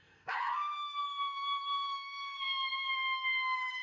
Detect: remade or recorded remade